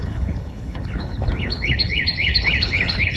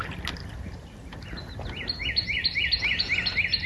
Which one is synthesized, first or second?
first